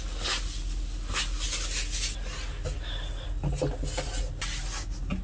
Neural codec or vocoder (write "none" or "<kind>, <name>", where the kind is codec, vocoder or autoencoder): none